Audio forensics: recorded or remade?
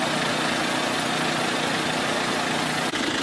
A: recorded